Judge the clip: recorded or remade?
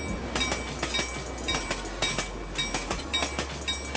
recorded